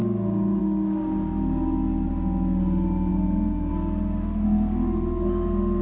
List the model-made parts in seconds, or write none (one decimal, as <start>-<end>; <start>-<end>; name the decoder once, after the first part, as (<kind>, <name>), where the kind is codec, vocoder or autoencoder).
3.1-3.7 (vocoder, Vocos)